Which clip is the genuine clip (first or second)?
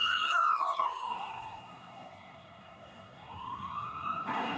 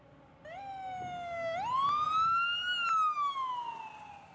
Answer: second